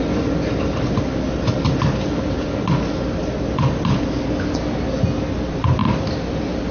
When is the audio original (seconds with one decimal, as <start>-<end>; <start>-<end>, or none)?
0.0-6.7